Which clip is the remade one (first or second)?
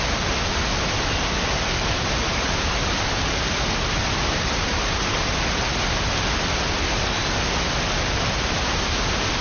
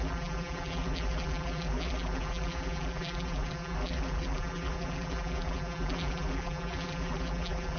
second